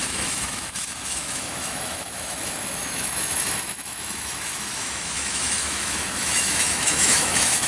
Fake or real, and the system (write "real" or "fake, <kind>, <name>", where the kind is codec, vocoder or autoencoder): fake, autoencoder, DAC-VAE